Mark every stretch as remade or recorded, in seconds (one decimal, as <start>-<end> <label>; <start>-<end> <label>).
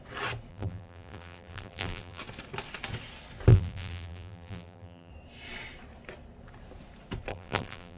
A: 0.0-0.5 recorded; 0.5-2.2 remade; 2.2-3.5 recorded; 3.5-5.1 remade; 5.1-7.3 recorded; 7.3-8.0 remade